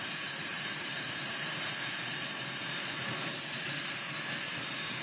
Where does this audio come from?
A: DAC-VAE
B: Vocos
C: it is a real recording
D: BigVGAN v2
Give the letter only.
D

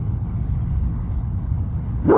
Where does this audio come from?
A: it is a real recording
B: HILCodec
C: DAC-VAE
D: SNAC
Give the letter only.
B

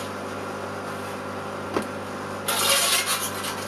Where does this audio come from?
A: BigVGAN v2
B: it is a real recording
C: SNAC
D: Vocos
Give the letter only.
B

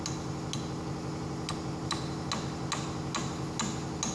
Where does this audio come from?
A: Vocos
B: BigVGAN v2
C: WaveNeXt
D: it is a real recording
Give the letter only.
D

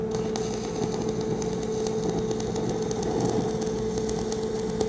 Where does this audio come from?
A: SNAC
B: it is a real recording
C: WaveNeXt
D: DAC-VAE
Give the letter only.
B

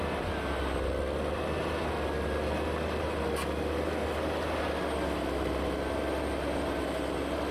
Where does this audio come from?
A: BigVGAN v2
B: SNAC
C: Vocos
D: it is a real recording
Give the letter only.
D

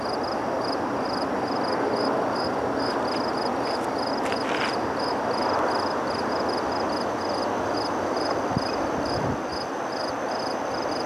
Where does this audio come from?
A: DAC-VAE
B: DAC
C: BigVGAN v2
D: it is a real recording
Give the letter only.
D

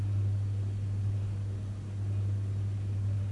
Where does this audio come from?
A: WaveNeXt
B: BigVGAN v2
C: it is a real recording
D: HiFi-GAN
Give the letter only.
C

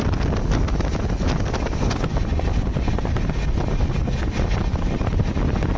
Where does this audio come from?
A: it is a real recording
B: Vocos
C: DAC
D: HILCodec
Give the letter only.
A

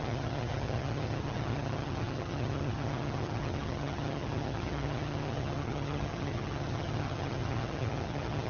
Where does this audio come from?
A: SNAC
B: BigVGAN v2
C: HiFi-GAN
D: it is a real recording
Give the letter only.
C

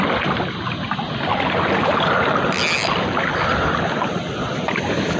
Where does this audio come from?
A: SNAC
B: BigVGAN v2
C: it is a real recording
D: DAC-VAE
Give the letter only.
C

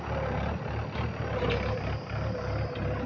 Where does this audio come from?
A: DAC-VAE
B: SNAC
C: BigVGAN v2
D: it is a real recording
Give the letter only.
D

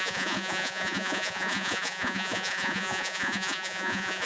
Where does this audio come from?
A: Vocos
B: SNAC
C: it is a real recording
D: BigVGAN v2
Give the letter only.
A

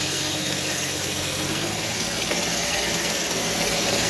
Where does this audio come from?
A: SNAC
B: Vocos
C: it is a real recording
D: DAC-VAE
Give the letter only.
A